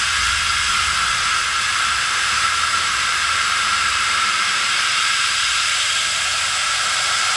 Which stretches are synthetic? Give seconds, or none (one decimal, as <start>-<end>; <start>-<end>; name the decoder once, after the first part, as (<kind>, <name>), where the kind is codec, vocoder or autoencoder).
1.7-6.1 (vocoder, BigVGAN v2); 6.6-7.4